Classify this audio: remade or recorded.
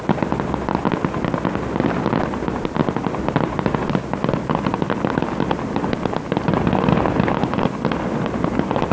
recorded